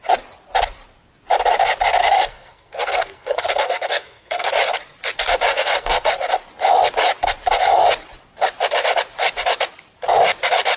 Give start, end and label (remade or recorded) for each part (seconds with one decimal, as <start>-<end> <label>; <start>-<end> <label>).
0.0-2.0 recorded; 2.0-4.5 remade; 4.5-5.5 recorded; 5.5-6.1 remade; 6.1-10.8 recorded